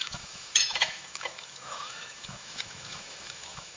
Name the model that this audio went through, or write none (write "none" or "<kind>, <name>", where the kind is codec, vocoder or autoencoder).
autoencoder, DAC-VAE